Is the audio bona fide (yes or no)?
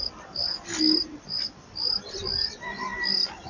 yes